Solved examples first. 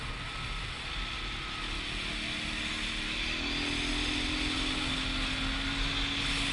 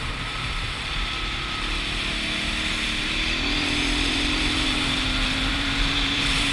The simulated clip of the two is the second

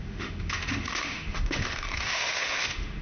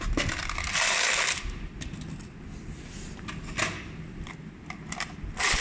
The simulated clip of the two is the first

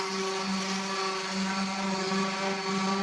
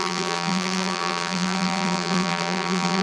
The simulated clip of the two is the second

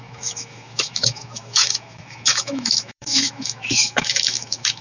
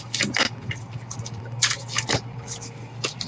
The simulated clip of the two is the first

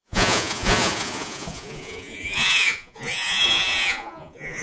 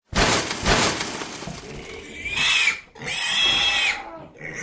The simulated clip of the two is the first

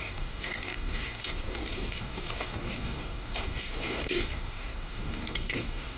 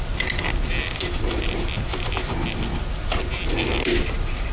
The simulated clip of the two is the first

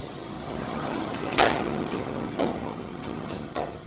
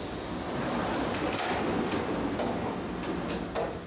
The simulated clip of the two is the first